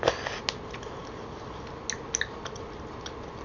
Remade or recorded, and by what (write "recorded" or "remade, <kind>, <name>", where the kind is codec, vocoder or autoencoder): recorded